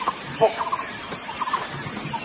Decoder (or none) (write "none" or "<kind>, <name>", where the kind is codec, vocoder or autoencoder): vocoder, BigVGAN v2